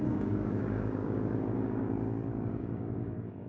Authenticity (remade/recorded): remade